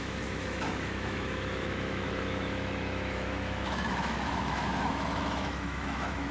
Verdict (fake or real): fake